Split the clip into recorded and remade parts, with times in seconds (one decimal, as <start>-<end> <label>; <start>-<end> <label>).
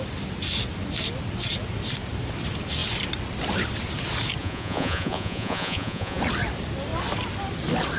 0.0-4.4 recorded; 4.4-6.2 remade; 6.2-8.0 recorded